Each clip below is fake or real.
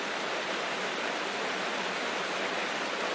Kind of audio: real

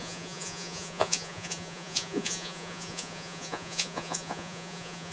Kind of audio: fake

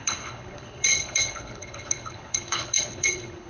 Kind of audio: fake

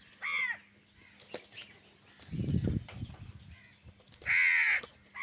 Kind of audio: real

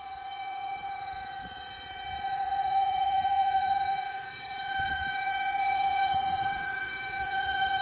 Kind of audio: fake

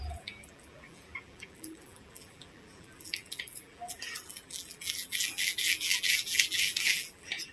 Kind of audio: fake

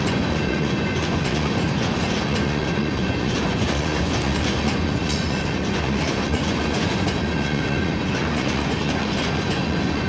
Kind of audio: fake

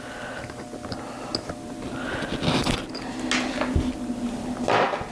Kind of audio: real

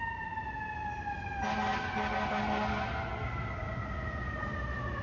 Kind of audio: real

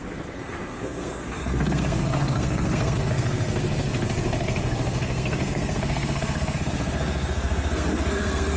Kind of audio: fake